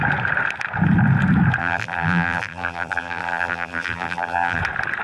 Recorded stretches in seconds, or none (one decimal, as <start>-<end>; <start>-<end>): 0.0-1.6; 4.6-5.0